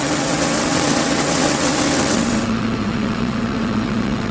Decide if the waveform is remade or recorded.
remade